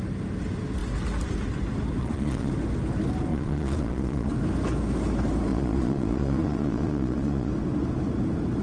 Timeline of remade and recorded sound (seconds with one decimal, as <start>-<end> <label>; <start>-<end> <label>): 0.0-2.0 recorded; 2.0-2.5 remade; 2.5-3.3 recorded; 3.3-4.3 remade; 4.3-5.5 recorded; 5.5-7.5 remade; 7.5-8.6 recorded

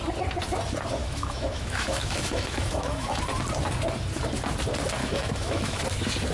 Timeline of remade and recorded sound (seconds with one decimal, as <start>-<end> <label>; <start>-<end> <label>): 0.0-1.0 recorded; 1.0-3.2 remade; 3.2-5.0 recorded; 5.0-5.8 remade; 5.8-6.3 recorded

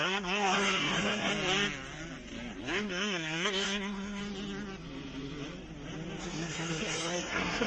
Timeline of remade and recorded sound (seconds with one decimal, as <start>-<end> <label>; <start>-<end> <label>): 0.0-1.3 remade; 1.3-2.6 recorded; 2.6-4.2 remade; 4.2-6.2 recorded; 6.2-7.7 remade

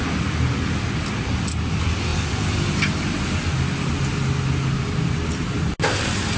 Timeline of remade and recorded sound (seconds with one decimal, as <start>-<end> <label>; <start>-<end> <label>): 0.0-6.4 recorded